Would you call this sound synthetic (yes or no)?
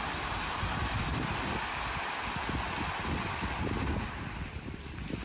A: yes